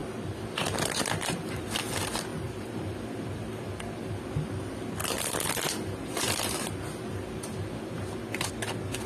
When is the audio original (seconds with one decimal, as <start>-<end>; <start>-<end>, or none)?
1.8-2.3; 3.6-9.1